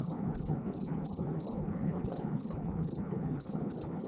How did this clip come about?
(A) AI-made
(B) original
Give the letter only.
A